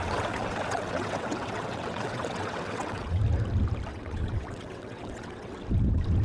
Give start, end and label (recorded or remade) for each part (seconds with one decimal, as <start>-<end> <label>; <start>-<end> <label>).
0.0-3.2 remade; 3.2-3.9 recorded; 3.9-5.5 remade; 5.5-6.2 recorded